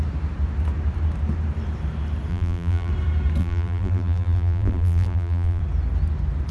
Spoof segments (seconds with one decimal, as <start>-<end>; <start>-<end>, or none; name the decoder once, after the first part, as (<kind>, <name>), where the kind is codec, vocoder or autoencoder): 2.3-2.9 (vocoder, BigVGAN v2); 3.4-5.6

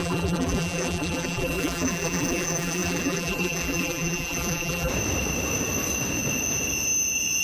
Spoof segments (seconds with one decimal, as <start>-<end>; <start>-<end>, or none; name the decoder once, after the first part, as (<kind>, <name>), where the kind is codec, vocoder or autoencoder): 0.0-4.9 (vocoder, BigVGAN v2)